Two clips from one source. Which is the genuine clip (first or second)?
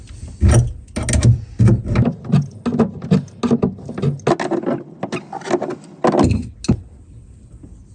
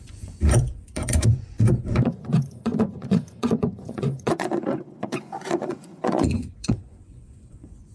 first